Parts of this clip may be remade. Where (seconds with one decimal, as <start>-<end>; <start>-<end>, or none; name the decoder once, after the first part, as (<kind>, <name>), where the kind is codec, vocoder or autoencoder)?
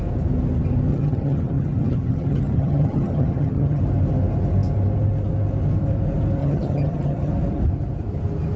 0.9-3.8 (vocoder, HiFi-GAN); 6.4-7.3